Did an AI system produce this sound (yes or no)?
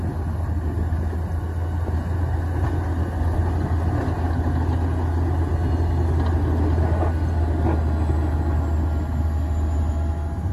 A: no